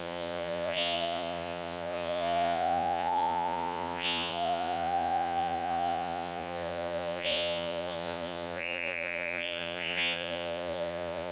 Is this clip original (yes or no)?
no